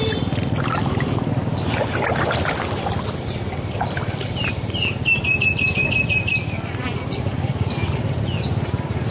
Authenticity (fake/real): real